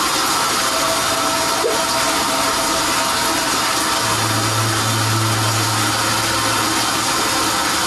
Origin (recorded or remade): recorded